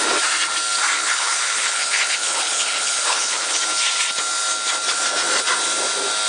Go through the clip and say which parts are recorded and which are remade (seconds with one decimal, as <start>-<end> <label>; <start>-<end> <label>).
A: 0.0-1.0 recorded; 1.0-3.6 remade; 3.6-6.3 recorded